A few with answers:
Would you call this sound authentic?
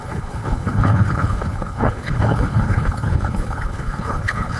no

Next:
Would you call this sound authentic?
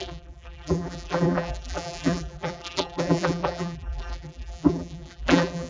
no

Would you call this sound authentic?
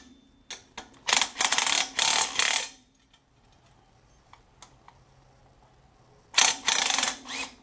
yes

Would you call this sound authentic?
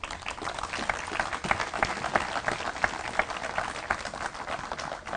yes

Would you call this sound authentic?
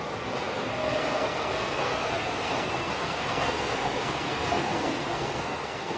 no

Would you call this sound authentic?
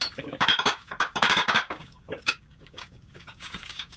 no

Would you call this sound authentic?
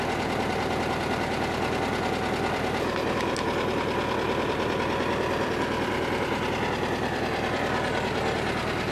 yes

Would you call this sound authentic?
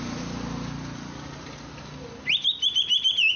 yes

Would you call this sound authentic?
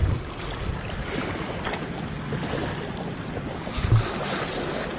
yes